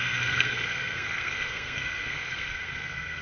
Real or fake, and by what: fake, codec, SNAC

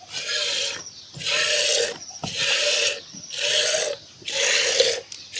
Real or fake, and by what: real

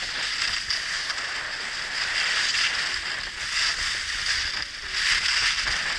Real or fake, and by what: real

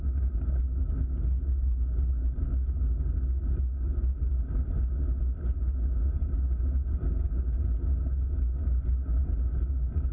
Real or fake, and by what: real